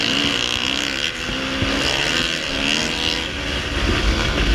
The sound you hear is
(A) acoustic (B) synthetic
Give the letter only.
A